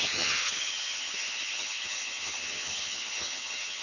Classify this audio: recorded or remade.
remade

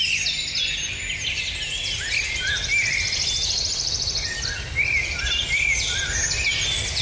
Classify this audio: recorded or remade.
recorded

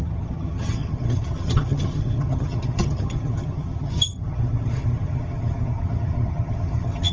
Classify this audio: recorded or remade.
remade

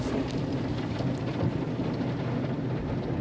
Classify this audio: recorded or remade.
recorded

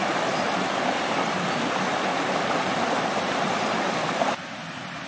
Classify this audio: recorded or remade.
recorded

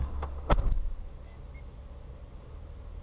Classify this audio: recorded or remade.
recorded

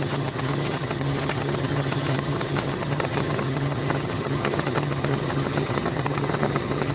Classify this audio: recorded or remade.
remade